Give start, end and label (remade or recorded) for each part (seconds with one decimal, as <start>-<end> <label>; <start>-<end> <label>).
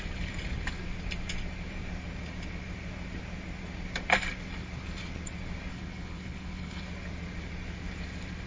0.0-5.7 recorded; 5.7-6.9 remade; 6.9-8.5 recorded